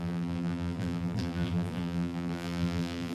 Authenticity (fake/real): fake